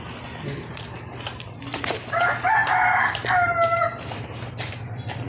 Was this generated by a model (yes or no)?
no